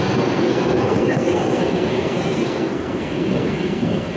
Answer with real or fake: fake